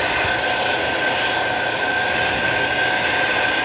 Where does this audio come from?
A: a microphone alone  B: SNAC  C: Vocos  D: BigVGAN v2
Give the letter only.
A